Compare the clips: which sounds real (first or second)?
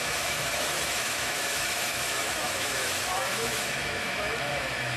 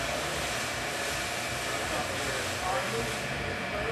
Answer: second